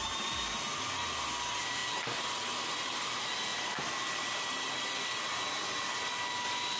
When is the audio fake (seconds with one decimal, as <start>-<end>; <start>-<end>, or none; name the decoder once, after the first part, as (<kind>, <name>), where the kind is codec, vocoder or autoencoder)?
3.5-5.1 (vocoder, BigVGAN v2)